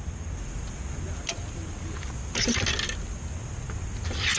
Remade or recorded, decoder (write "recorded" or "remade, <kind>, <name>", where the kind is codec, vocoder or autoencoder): recorded